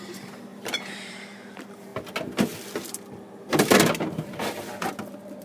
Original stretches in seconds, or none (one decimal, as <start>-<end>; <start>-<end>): 1.9-5.4

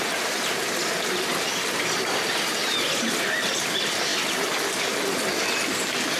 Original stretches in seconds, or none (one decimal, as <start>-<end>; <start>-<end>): 0.0-2.6; 3.2-4.1

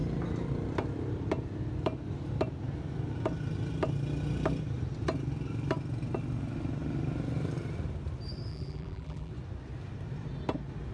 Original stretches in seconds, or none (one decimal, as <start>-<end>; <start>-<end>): 0.0-8.5; 9.3-10.9